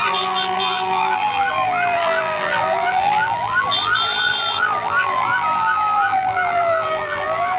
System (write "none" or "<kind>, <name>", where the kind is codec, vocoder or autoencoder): vocoder, BigVGAN v2